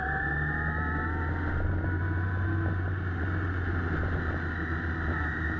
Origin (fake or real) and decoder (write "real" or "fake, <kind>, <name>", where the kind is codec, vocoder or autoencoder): real